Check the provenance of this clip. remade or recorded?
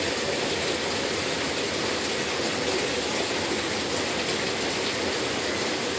recorded